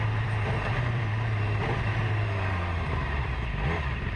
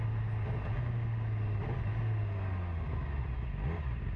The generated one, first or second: first